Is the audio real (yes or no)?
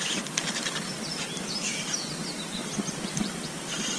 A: no